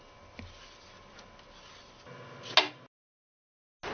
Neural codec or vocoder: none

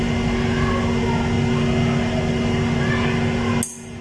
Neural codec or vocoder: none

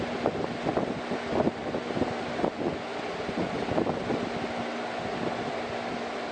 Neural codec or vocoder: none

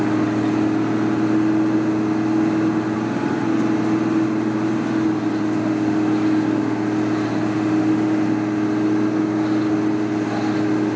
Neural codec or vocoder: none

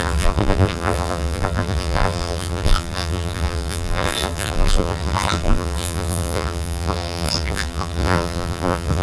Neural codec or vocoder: vocoder, BigVGAN v2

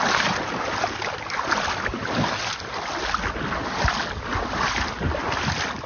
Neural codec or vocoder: none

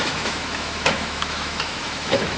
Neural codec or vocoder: autoencoder, DAC-VAE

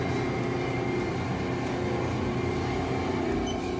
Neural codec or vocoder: none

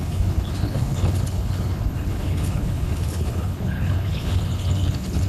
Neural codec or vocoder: codec, HILCodec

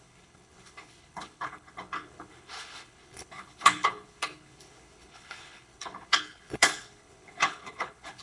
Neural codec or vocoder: codec, HILCodec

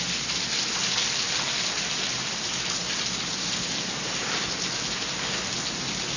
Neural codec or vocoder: none